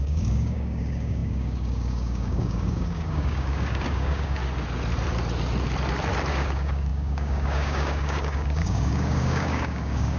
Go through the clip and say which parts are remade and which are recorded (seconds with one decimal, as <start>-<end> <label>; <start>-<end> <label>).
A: 0.0-4.4 remade; 4.4-6.3 recorded; 6.3-10.2 remade